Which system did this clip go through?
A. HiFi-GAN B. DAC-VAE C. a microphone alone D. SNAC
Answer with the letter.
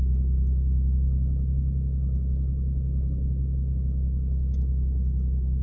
C